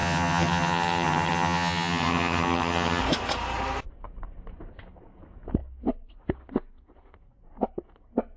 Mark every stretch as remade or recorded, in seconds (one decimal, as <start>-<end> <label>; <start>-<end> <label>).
0.0-3.0 remade; 3.0-8.4 recorded